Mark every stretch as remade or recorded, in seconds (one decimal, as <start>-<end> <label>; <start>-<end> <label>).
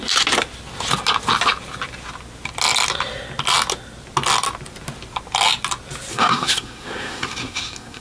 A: 0.0-6.1 recorded; 6.1-8.0 remade